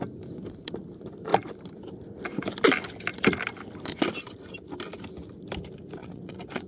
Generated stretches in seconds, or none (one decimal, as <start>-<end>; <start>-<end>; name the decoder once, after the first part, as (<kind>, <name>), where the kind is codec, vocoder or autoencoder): 6.0-6.7 (vocoder, Vocos)

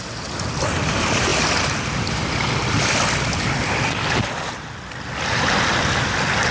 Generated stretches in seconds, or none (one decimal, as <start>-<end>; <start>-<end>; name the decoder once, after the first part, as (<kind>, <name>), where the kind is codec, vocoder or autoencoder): none

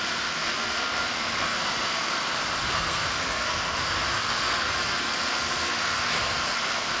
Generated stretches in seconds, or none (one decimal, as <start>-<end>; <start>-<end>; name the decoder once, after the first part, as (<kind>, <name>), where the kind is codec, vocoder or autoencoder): 0.0-2.1 (codec, SNAC); 2.7-7.0

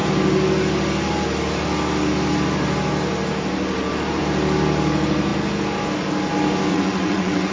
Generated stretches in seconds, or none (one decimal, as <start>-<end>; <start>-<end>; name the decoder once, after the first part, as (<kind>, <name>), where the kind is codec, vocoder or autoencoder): 6.7-7.5 (vocoder, WaveNeXt)

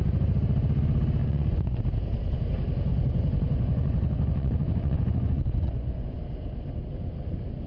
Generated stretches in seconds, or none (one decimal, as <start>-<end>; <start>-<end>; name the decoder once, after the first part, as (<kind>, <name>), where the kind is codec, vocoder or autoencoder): 1.2-1.8 (vocoder, Vocos); 2.9-6.2

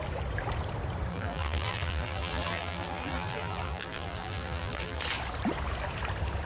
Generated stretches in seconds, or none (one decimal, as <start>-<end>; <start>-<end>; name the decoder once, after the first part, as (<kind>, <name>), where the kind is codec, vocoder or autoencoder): 1.1-5.0 (vocoder, BigVGAN v2)